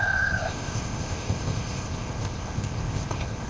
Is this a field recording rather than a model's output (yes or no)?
no